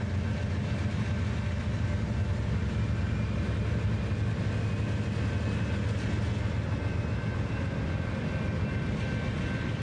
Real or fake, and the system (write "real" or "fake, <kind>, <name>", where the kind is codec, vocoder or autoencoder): real